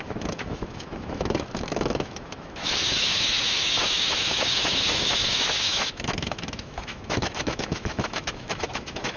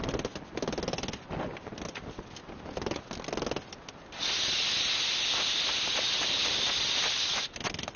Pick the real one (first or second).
second